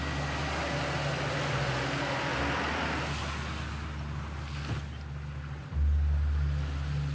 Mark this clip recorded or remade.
recorded